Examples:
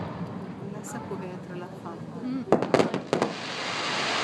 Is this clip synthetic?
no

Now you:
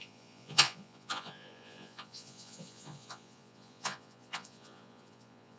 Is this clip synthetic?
yes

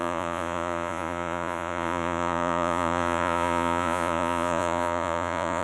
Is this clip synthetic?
yes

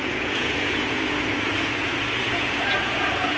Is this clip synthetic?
yes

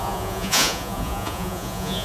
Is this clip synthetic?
yes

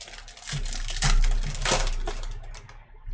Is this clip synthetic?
no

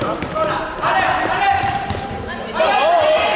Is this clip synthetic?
yes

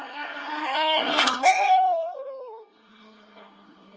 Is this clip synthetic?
yes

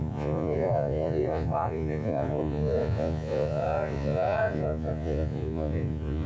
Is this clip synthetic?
yes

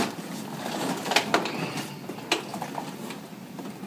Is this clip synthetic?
no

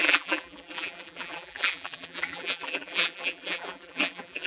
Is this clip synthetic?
yes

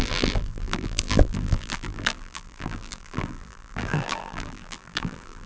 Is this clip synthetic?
yes